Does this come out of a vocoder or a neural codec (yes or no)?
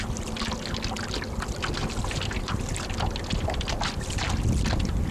no